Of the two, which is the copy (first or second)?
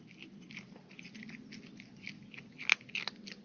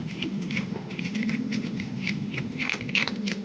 second